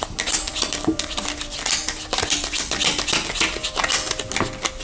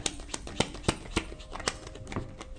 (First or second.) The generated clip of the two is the second